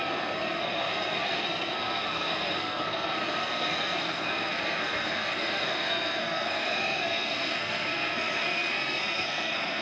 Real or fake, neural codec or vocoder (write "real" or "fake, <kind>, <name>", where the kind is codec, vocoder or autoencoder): fake, codec, SNAC